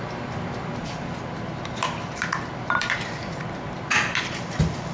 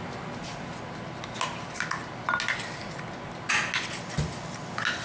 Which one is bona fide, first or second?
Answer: second